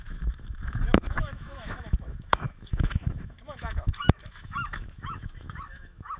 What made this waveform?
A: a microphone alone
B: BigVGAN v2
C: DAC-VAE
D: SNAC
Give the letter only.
C